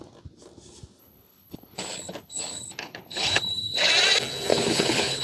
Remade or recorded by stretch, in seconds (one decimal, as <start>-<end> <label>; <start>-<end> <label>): 0.0-1.0 recorded; 1.0-3.9 remade; 3.9-4.5 recorded; 4.5-5.2 remade